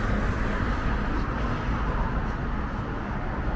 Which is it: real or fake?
real